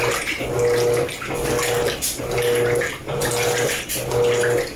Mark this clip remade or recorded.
recorded